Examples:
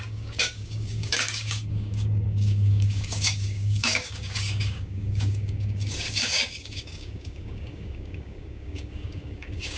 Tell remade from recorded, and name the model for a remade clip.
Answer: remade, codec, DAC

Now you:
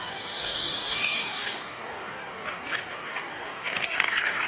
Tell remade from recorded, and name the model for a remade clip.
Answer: remade, codec, DAC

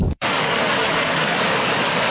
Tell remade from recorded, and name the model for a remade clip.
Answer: remade, codec, DAC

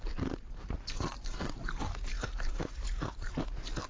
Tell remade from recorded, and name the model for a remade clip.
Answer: recorded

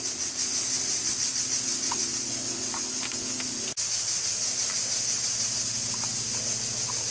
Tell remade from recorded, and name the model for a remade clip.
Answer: recorded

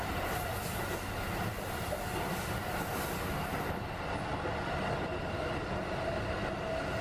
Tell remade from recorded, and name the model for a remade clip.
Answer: recorded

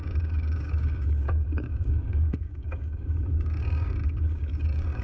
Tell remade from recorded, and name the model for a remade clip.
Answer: remade, codec, DAC